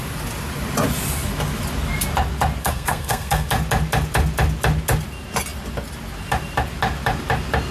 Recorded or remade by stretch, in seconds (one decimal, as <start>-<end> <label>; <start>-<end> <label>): 0.0-2.6 recorded; 2.6-3.5 remade; 3.5-7.7 recorded